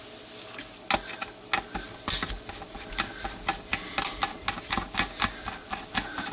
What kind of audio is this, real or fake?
real